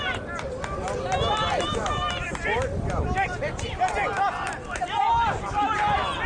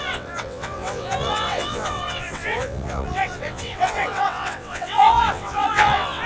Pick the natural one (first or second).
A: first